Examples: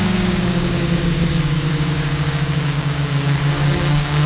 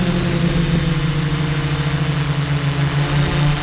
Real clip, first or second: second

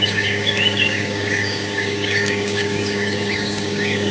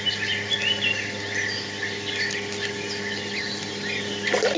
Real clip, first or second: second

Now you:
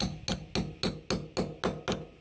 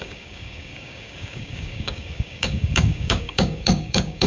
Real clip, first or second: first